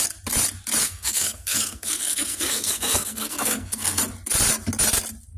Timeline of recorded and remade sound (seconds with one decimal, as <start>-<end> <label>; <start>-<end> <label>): 0.0-0.8 recorded; 0.8-4.0 remade; 4.0-5.4 recorded